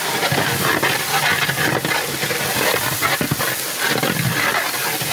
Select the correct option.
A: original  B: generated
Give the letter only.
A